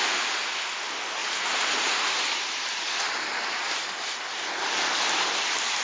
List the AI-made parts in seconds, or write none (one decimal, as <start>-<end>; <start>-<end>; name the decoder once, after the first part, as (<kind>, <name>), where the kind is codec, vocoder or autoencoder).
1.2-2.8 (vocoder, BigVGAN v2)